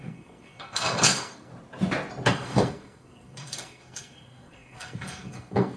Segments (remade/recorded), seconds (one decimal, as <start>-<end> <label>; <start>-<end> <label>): 0.0-1.5 remade; 1.5-2.3 recorded; 2.3-5.8 remade